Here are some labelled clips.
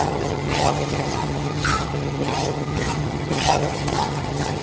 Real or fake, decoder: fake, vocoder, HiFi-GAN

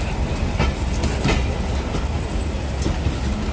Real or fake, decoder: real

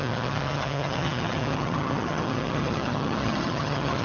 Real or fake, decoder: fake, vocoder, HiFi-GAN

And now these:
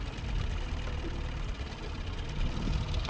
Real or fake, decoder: real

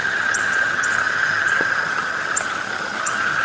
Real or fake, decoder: fake, vocoder, HiFi-GAN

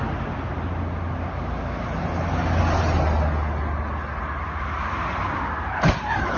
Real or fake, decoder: real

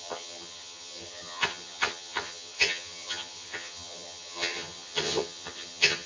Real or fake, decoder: fake, vocoder, HiFi-GAN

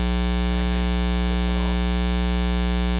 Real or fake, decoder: real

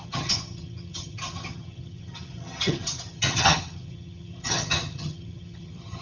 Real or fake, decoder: fake, vocoder, HiFi-GAN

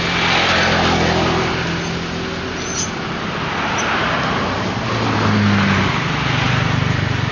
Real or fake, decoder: real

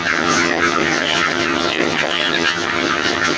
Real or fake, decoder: fake, vocoder, HiFi-GAN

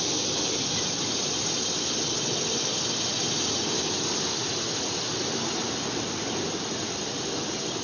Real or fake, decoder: real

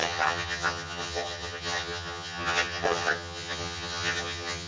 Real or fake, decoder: fake, vocoder, HiFi-GAN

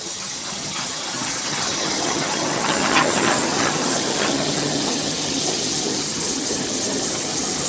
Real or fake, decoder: fake, vocoder, HiFi-GAN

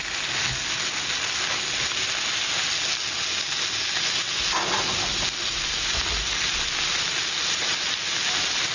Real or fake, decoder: real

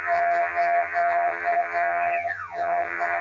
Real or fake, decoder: fake, vocoder, HiFi-GAN